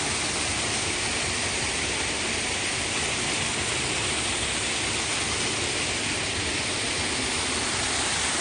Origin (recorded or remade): recorded